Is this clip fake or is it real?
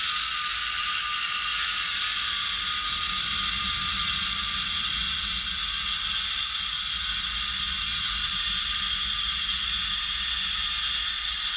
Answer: real